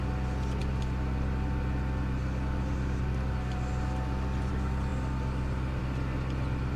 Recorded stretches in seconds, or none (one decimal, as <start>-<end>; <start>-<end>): 0.0-6.8